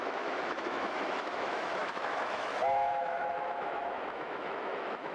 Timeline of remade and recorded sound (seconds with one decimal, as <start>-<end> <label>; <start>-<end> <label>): 0.0-5.1 remade